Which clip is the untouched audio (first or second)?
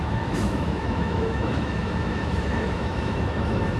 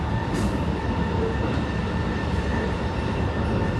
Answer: second